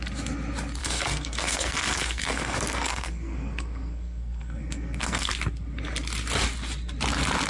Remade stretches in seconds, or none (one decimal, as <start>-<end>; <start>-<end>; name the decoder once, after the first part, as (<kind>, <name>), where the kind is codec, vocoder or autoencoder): 0.8-5.3 (codec, SNAC)